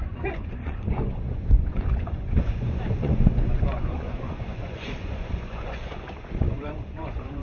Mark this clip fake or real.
fake